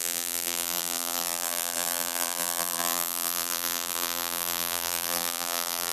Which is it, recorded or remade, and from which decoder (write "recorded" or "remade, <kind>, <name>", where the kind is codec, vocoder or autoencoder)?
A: remade, vocoder, BigVGAN v2